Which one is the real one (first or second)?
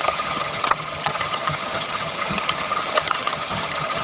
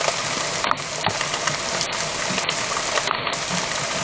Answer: second